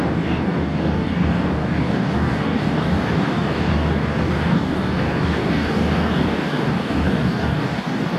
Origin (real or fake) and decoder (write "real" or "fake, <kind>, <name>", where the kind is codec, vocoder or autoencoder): fake, codec, DAC